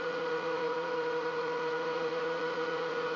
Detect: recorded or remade remade